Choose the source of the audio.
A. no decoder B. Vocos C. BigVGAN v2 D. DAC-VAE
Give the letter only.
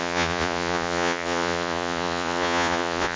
B